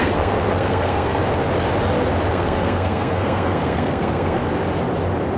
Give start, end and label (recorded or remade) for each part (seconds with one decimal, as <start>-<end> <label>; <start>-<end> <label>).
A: 0.0-1.2 remade; 1.2-2.3 recorded; 2.3-4.4 remade; 4.4-5.4 recorded